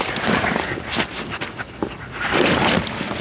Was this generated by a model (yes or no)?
no